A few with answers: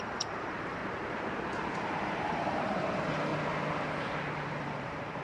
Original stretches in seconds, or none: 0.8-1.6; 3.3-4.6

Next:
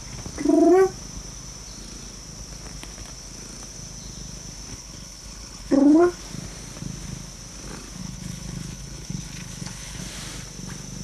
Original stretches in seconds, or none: 0.0-4.7; 6.2-8.0; 10.0-11.0

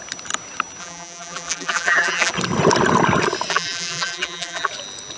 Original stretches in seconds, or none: 0.0-0.8; 2.3-3.5; 4.7-5.2

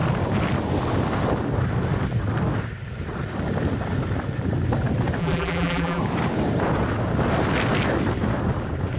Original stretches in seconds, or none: 0.0-5.2; 6.0-9.0

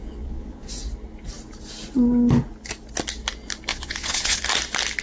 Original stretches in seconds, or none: 0.8-3.7; 4.4-5.0

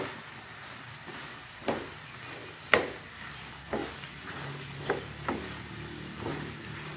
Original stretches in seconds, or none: 0.0-7.0

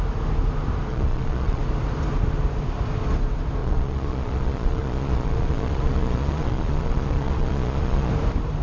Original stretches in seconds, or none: 0.0-0.9; 1.6-3.6; 8.1-8.6